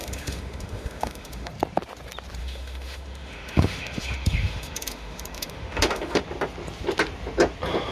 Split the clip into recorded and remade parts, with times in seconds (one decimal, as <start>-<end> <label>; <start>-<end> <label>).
0.0-1.5 remade; 1.5-2.4 recorded; 2.4-6.2 remade; 6.2-7.9 recorded